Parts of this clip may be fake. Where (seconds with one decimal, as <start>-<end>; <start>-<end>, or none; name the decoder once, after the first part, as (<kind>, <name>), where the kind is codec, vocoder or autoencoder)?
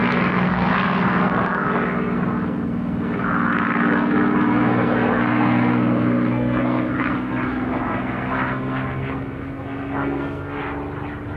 0.0-10.6 (codec, SNAC)